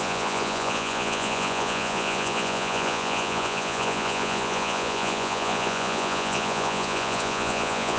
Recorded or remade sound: remade